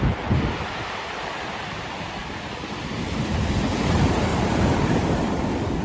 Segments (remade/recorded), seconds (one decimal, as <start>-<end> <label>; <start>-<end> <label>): 0.0-4.3 recorded; 4.3-5.3 remade; 5.3-5.8 recorded